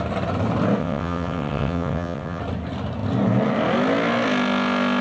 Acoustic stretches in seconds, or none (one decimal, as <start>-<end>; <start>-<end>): 0.0-0.8; 2.4-5.0